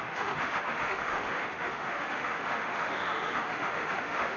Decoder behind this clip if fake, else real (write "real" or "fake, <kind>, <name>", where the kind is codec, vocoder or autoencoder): fake, autoencoder, DAC-VAE